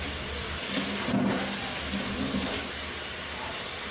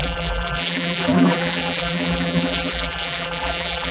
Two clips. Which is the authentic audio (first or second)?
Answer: first